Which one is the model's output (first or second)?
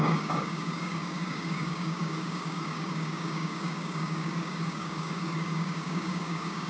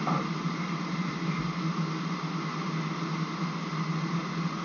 first